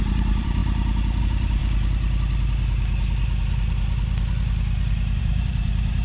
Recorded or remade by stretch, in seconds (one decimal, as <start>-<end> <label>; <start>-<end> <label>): 0.0-0.6 remade; 0.6-1.2 recorded; 1.2-1.6 remade; 1.6-5.2 recorded; 5.2-6.0 remade